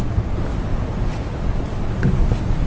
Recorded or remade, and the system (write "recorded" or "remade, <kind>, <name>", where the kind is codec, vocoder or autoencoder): recorded